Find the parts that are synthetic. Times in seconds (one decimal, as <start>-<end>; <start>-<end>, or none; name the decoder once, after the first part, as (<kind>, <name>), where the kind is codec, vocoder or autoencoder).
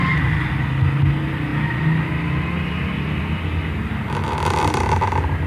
none